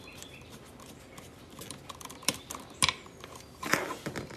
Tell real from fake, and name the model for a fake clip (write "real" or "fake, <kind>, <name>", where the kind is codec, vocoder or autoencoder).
real